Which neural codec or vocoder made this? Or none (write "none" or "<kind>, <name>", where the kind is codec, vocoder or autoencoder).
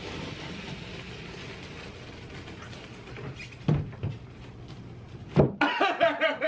vocoder, BigVGAN v2